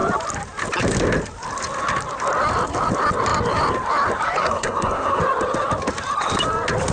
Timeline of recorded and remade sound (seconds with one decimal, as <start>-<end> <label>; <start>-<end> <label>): 0.0-4.4 recorded; 4.4-5.2 remade; 5.2-6.9 recorded